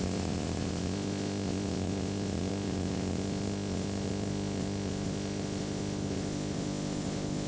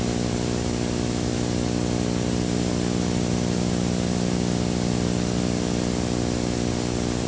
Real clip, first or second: second